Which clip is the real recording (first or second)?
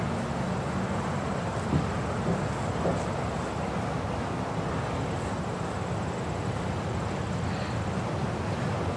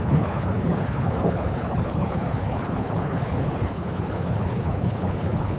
first